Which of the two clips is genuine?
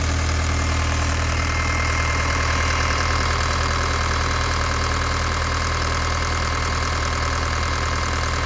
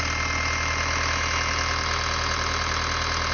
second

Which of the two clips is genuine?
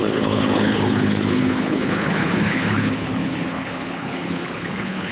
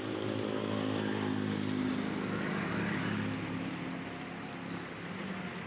second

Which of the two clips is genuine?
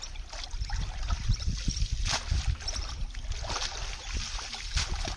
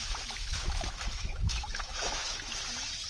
first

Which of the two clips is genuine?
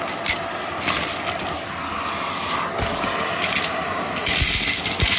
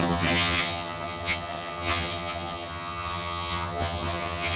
first